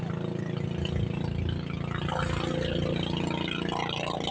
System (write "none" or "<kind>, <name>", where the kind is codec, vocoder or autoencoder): none